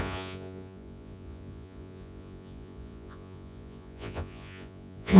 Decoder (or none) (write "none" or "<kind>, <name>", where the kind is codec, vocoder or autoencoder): vocoder, Vocos